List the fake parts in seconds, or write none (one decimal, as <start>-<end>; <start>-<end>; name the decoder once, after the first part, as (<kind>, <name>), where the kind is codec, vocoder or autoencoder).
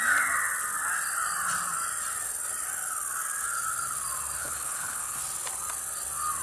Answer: 4.4-5.2 (codec, HILCodec)